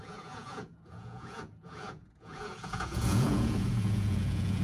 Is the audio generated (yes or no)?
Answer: yes